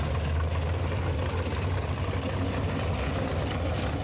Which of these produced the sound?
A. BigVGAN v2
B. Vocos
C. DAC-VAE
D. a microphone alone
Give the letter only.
D